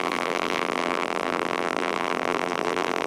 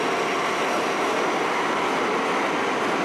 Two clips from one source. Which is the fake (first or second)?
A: first